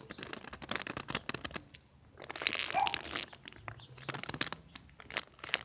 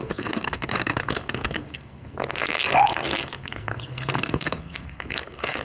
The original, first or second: first